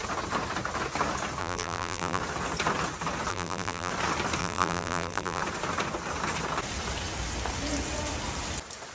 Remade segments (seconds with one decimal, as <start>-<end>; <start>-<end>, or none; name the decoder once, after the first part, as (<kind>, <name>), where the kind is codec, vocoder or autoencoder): 1.4-2.2 (vocoder, BigVGAN v2); 3.3-3.9; 4.4-5.4